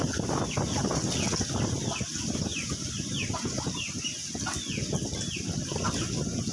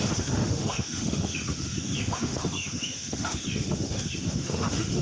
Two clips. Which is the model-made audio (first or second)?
second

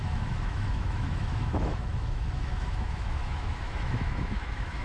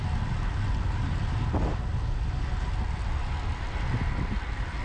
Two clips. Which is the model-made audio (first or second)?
first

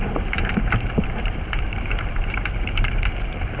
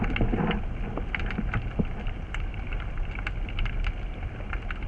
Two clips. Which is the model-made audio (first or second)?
first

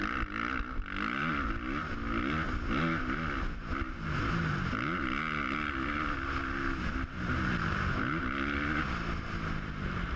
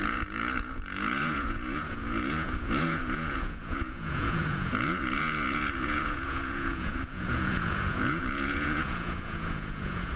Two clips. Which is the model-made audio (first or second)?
second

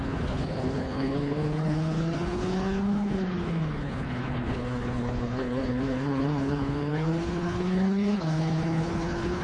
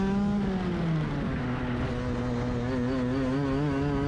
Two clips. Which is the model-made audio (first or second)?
first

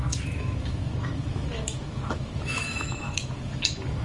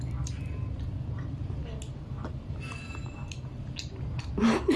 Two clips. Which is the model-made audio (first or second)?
first